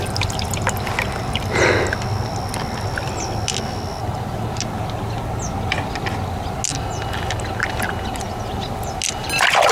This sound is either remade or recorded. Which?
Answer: recorded